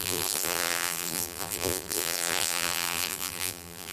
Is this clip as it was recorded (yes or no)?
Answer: no